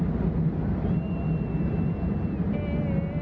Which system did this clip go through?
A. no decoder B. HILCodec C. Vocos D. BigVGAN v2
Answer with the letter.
A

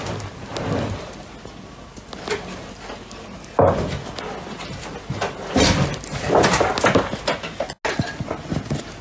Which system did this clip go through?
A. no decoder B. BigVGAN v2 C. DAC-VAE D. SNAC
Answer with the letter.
A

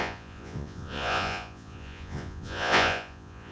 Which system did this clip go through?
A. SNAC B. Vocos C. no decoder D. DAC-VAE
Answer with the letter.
B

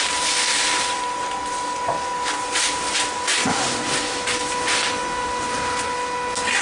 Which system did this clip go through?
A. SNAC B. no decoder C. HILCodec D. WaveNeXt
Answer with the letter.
B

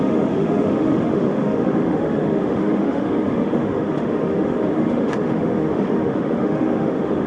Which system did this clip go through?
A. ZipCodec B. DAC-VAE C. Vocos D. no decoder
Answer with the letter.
B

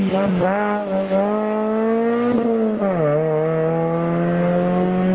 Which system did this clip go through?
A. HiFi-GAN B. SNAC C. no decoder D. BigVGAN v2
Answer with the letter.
C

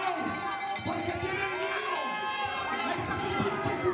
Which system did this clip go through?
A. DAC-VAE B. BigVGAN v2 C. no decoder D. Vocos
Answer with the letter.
C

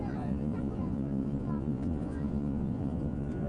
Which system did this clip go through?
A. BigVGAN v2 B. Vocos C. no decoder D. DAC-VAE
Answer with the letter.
B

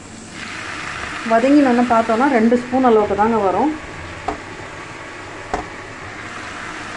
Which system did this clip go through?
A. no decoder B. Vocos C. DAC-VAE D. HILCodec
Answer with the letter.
A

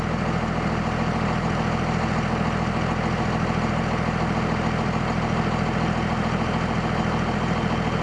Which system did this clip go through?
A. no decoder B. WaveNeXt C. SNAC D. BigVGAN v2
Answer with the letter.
A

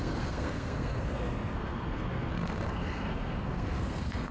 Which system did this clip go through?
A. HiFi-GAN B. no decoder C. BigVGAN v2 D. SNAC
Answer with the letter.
D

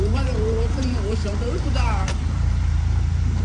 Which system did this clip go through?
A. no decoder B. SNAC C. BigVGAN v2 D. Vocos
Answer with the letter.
C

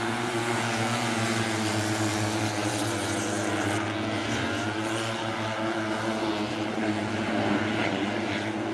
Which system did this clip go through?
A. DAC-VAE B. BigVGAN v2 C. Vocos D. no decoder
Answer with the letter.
C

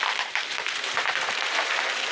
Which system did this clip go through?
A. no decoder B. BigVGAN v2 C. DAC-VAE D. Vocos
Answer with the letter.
B